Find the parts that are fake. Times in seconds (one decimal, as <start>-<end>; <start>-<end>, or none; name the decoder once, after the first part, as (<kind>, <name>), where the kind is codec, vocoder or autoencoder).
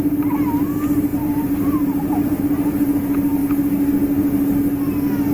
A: 1.1-2.4 (vocoder, BigVGAN v2)